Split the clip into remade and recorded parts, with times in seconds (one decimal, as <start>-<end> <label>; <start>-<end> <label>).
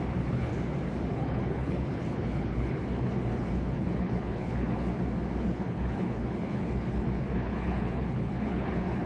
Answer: 0.0-0.5 remade; 0.5-1.1 recorded; 1.1-4.9 remade; 4.9-5.4 recorded; 5.4-9.1 remade